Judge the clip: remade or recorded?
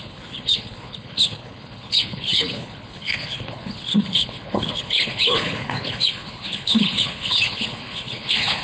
remade